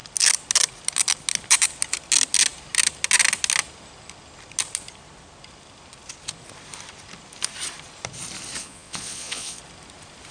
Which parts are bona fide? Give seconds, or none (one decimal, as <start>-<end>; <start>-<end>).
0.0-8.6; 9.6-10.3